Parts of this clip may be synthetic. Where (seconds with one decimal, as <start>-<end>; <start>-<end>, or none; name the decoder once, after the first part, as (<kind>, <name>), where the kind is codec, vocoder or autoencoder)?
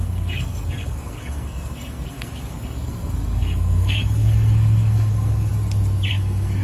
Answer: 0.0-5.5 (codec, SNAC); 6.1-6.6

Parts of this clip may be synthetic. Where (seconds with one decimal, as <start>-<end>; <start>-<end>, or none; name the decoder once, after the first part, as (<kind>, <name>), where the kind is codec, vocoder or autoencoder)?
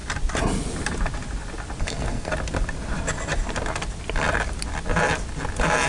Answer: 1.8-2.3 (codec, SNAC)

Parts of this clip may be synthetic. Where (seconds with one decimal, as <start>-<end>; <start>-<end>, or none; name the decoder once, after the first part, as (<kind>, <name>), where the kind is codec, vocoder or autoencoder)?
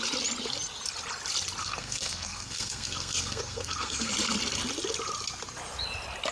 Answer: 1.6-4.1 (codec, SNAC)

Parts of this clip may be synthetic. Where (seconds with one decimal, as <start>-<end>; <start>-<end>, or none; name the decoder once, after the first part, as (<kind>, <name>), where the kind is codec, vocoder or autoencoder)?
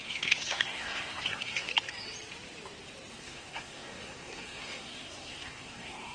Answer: 0.0-1.7 (codec, SNAC); 3.1-6.1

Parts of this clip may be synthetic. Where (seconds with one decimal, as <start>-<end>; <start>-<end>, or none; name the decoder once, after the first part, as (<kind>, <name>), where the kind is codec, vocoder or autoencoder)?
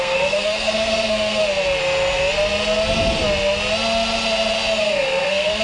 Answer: 0.0-1.4 (codec, SNAC); 4.8-5.6